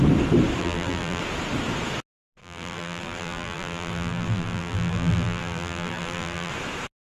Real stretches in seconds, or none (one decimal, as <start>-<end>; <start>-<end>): 0.0-0.6; 1.2-2.4; 6.5-7.1